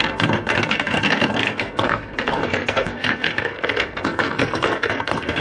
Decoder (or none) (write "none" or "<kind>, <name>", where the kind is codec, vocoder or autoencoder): codec, SNAC